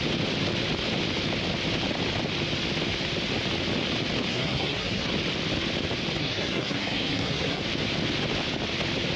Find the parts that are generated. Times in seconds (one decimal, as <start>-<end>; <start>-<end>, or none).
4.3-5.1; 6.2-7.6